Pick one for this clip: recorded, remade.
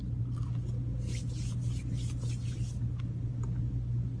recorded